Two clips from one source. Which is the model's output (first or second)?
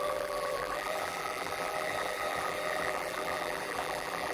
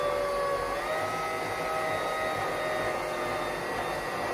first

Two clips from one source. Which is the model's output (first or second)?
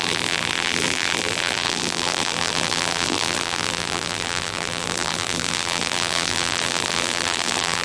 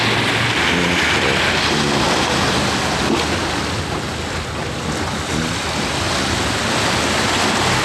first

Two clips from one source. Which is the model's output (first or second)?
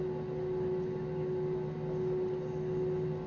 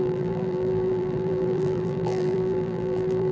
second